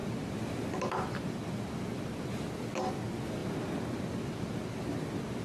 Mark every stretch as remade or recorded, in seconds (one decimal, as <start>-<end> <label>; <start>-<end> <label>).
0.0-5.4 recorded